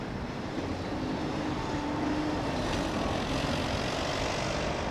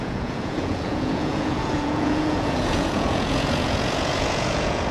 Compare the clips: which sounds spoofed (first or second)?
second